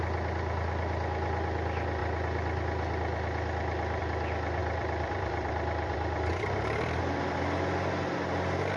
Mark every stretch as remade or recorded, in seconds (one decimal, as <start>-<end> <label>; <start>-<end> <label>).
0.0-4.6 recorded; 4.6-7.0 remade; 7.0-8.8 recorded